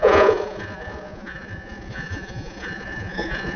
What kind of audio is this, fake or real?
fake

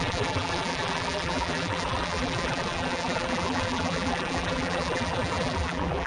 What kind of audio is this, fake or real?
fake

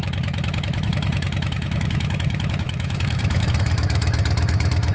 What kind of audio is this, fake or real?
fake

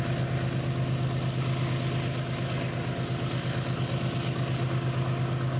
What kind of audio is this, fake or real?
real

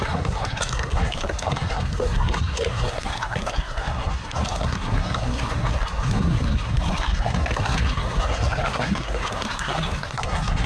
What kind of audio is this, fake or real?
fake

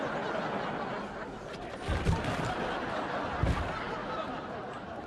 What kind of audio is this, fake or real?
real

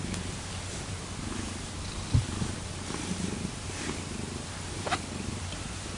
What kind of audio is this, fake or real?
real